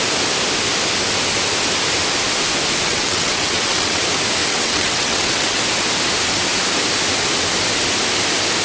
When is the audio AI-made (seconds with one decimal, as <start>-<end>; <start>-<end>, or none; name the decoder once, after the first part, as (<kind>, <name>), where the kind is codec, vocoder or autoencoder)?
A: 2.9-4.0 (vocoder, WaveNeXt); 4.4-5.6